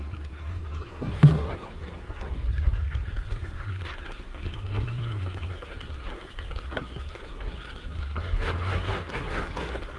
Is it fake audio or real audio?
fake